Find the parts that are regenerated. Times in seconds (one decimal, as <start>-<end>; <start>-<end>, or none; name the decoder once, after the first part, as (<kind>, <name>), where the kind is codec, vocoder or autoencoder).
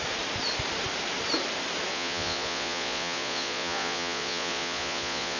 1.9-5.4 (vocoder, Vocos)